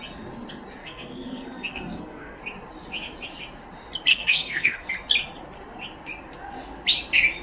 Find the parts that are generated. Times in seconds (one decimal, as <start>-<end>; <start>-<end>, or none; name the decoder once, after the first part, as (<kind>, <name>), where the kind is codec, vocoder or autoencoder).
0.8-2.4 (codec, SNAC); 4.1-4.9